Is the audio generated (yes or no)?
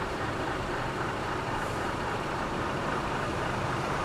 yes